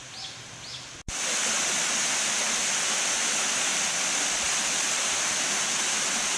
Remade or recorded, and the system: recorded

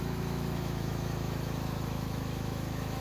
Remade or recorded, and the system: remade, autoencoder, DAC-VAE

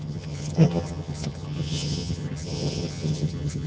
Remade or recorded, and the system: remade, vocoder, HiFi-GAN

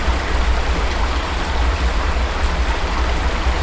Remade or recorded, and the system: recorded